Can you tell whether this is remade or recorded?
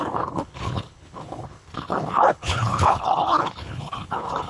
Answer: remade